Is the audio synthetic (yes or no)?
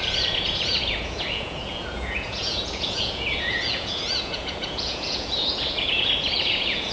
yes